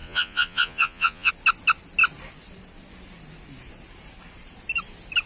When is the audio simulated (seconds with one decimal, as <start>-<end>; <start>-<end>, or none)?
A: 0.0-1.3